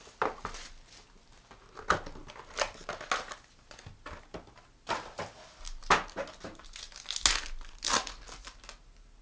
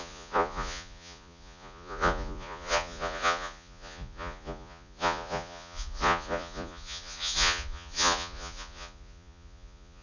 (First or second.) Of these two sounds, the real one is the first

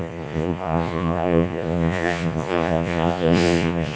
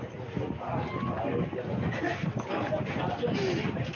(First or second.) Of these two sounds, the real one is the second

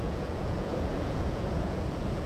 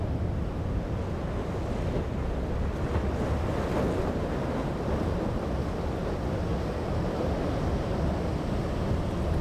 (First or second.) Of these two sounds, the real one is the second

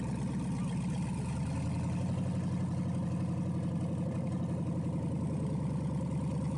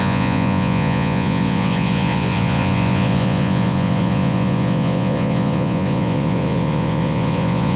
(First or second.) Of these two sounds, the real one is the first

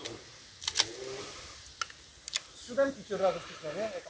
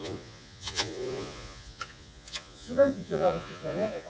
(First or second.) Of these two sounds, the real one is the first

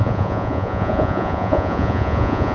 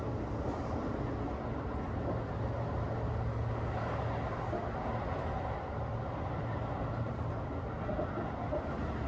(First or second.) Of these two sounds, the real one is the second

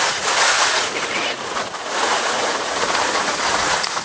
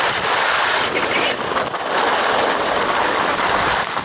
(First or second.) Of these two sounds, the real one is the second